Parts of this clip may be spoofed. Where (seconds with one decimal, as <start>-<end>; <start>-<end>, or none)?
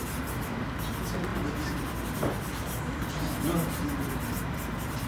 none